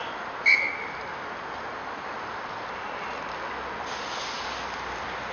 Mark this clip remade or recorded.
recorded